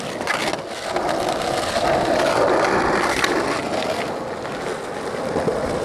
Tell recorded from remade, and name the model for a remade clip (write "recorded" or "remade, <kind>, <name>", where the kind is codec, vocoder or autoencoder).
recorded